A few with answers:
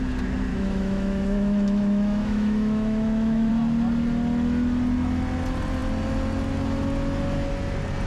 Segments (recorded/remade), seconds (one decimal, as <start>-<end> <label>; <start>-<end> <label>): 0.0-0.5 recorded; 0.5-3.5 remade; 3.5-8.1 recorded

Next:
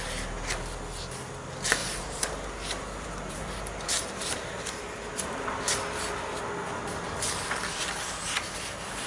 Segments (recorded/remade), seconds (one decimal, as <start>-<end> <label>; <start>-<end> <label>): 0.0-1.8 recorded; 1.8-6.4 remade; 6.4-9.1 recorded

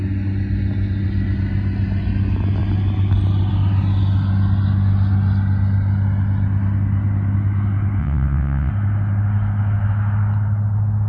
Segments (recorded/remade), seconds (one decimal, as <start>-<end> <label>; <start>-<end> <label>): 0.0-8.0 recorded; 8.0-8.7 remade; 8.7-11.1 recorded

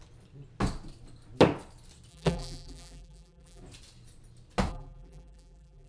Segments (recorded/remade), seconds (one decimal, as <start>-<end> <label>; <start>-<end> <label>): 0.0-2.1 recorded; 2.1-3.6 remade; 3.6-4.7 recorded; 4.7-5.9 remade

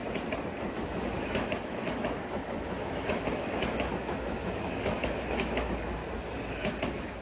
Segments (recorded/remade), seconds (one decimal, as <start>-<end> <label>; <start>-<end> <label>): 0.0-0.7 recorded; 0.7-6.0 remade; 6.0-6.5 recorded; 6.5-7.2 remade